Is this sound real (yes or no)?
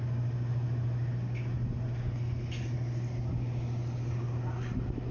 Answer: yes